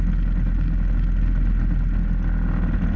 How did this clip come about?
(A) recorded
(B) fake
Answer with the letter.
A